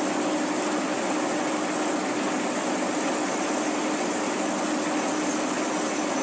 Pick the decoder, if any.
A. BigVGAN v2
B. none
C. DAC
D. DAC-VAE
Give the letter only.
B